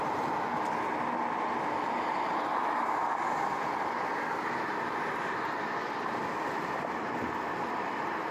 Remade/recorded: recorded